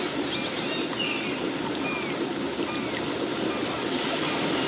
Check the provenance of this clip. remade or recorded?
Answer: recorded